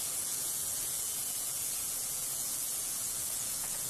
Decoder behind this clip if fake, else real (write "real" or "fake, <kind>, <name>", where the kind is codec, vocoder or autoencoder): fake, vocoder, Vocos